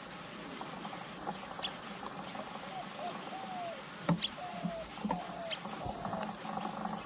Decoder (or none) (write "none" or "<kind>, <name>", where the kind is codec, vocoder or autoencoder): none